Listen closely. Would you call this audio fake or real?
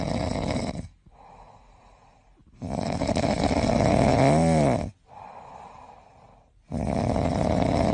real